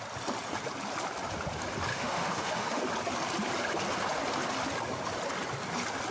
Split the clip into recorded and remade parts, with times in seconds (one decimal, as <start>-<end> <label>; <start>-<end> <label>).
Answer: 0.0-1.9 recorded; 1.9-2.8 remade; 2.8-6.1 recorded